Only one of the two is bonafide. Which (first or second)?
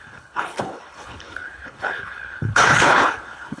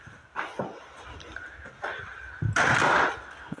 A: second